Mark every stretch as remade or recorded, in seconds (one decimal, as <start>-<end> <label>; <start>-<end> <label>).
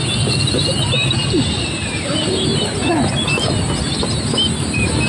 0.0-5.1 recorded